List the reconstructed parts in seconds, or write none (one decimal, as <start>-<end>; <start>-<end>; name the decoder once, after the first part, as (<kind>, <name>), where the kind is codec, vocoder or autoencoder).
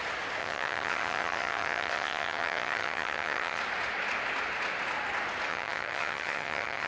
0.4-3.6 (vocoder, HiFi-GAN); 5.5-6.9